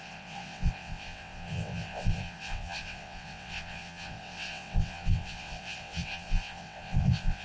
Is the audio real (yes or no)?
no